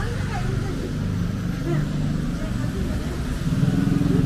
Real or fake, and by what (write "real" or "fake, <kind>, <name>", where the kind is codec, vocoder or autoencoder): real